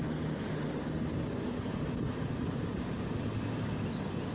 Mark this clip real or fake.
real